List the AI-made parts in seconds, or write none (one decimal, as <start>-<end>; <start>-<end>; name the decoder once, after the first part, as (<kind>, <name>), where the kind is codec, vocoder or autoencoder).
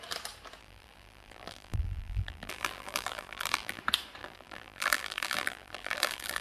0.6-3.8 (vocoder, BigVGAN v2); 4.2-6.4